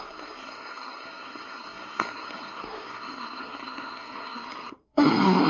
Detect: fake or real fake